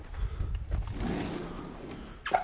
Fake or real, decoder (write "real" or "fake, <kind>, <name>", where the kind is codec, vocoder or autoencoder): real